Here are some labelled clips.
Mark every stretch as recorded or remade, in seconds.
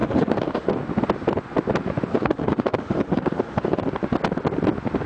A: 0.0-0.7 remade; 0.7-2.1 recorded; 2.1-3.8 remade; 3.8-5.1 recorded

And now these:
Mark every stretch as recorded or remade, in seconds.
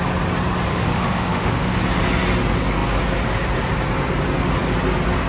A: 0.0-0.7 recorded; 0.7-1.8 remade; 1.8-5.3 recorded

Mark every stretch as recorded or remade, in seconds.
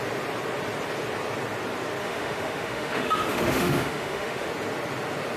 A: 0.0-2.0 recorded; 2.0-4.5 remade; 4.5-5.4 recorded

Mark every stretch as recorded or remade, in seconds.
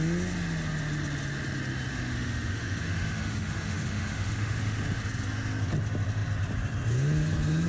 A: 0.0-1.9 recorded; 1.9-5.0 remade; 5.0-7.7 recorded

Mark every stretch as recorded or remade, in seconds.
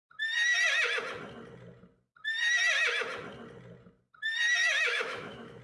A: 0.0-4.6 recorded; 4.6-5.6 remade